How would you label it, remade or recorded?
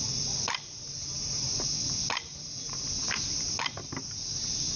recorded